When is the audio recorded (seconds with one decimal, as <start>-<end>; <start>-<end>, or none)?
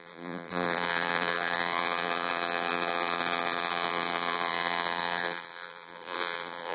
none